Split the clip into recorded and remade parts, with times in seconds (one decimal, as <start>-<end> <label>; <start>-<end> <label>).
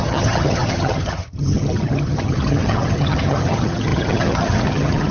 0.0-5.1 remade